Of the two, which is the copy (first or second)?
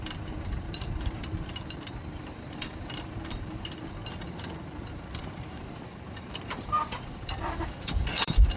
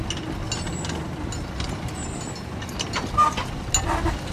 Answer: first